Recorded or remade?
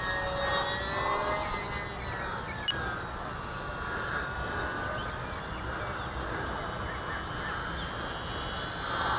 recorded